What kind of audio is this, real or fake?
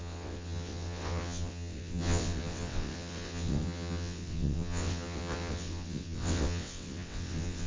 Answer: fake